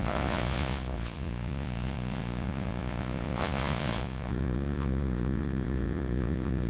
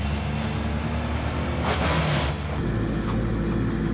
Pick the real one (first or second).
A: second